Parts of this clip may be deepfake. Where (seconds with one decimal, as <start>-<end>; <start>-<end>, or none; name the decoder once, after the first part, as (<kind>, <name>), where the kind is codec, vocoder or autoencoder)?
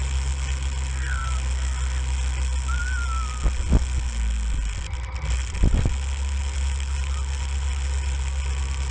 none